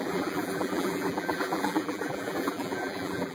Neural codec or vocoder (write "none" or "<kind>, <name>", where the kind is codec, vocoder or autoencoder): vocoder, BigVGAN v2